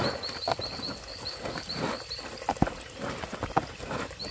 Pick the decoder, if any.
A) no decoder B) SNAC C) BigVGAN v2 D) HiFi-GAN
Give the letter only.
A